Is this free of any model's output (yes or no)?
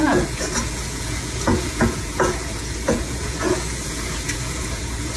no